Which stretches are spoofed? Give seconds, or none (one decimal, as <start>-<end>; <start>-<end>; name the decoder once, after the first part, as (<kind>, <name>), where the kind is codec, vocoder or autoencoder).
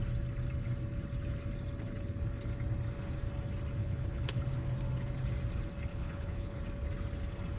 3.8-4.4 (codec, HILCodec); 5.9-6.6